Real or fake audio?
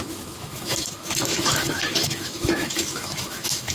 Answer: fake